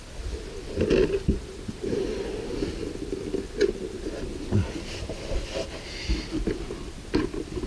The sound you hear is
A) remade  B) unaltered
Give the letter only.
B